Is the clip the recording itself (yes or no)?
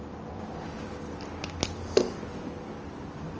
yes